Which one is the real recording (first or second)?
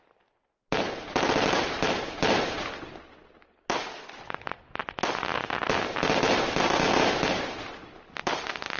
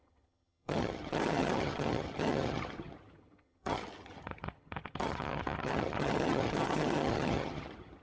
first